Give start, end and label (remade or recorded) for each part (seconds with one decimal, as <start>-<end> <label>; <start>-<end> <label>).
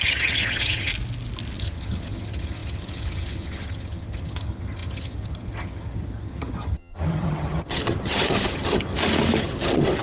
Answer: 0.0-0.9 remade; 0.9-1.6 recorded; 1.6-8.9 remade; 8.9-9.4 recorded; 9.4-10.0 remade